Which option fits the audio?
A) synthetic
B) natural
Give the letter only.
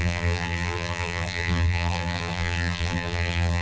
A